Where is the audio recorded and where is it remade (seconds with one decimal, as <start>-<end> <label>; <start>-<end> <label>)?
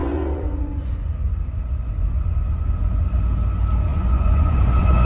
0.0-3.1 remade; 3.1-3.9 recorded; 3.9-5.1 remade